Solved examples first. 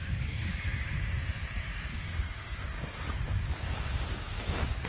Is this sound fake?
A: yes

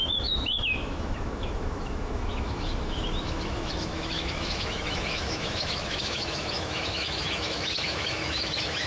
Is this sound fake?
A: yes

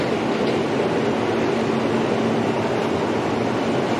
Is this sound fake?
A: no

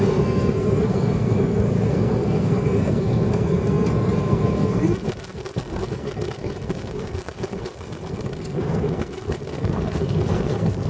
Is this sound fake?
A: yes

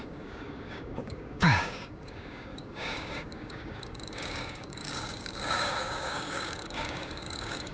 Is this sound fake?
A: yes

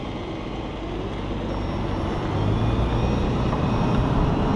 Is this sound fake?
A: no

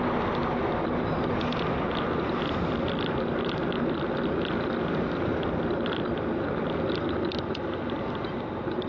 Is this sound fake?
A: no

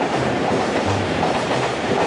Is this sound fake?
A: yes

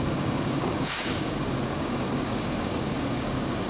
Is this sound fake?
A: yes